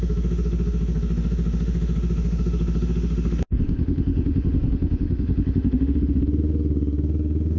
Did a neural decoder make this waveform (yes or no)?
yes